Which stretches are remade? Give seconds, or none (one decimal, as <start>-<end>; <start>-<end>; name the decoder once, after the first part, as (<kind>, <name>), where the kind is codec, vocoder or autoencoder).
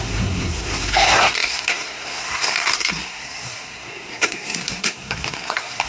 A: 0.0-5.9 (codec, SNAC)